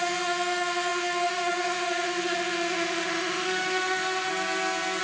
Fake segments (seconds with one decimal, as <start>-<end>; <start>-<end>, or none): 0.0-4.3